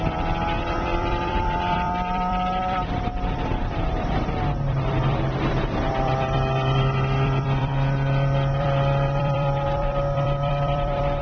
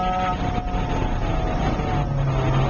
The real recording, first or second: second